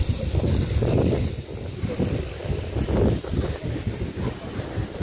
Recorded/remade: remade